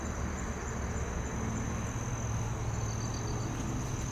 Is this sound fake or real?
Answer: real